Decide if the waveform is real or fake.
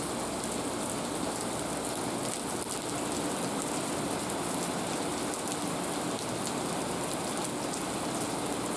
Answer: real